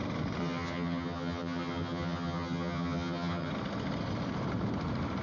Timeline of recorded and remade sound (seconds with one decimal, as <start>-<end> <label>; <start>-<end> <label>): 0.0-0.4 recorded; 0.4-3.5 remade; 3.5-5.2 recorded